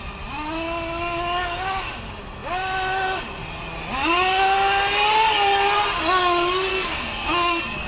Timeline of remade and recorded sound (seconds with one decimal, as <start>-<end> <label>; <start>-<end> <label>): 0.0-6.7 recorded; 6.7-7.9 remade